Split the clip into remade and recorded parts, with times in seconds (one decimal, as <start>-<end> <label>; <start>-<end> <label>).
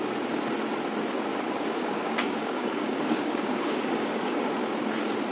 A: 0.0-1.3 recorded; 1.3-4.5 remade; 4.5-5.3 recorded